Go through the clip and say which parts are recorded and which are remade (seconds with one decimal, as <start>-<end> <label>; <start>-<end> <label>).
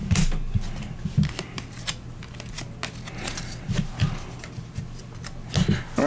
0.0-6.1 recorded